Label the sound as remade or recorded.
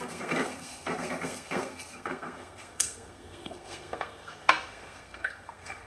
remade